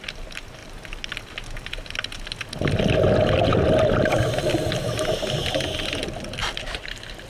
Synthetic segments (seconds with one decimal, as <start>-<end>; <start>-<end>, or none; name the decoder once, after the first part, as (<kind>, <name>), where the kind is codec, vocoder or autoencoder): 3.5-4.8 (vocoder, BigVGAN v2); 6.4-7.3